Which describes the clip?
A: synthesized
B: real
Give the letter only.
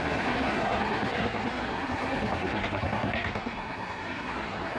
A